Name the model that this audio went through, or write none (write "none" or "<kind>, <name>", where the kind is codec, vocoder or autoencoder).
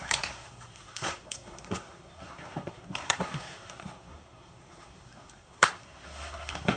codec, SNAC